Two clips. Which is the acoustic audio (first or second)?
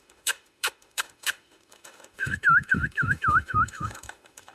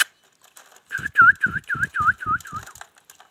second